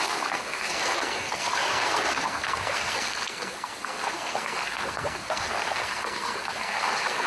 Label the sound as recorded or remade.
remade